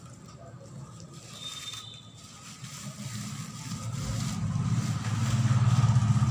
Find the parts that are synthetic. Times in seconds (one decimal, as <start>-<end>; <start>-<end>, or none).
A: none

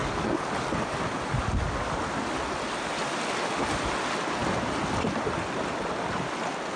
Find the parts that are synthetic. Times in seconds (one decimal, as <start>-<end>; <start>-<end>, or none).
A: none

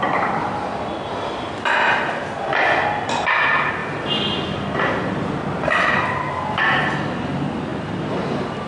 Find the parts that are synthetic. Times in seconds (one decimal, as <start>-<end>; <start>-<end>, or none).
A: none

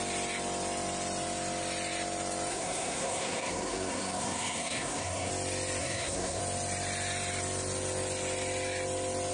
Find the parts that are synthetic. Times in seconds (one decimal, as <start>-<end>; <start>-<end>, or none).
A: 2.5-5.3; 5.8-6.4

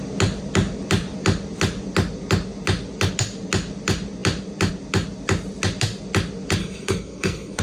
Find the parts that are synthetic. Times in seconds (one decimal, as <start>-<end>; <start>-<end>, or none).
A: 6.6-7.6